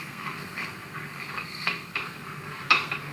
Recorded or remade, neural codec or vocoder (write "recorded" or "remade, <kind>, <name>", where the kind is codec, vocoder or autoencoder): remade, codec, SNAC